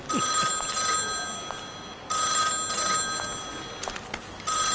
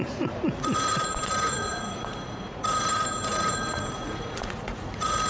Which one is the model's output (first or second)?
second